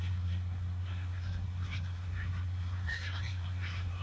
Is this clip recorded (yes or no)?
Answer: no